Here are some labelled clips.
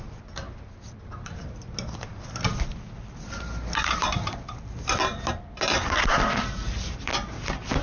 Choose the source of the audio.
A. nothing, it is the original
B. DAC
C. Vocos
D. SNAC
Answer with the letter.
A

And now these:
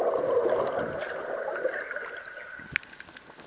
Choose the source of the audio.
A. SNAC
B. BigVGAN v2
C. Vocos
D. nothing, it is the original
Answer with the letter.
D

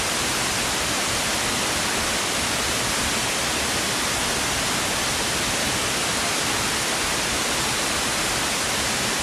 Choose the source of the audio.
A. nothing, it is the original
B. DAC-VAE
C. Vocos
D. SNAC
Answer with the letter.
A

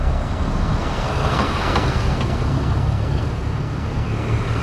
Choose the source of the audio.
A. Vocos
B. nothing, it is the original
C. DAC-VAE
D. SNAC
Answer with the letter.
D